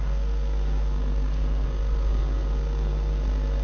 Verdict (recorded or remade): remade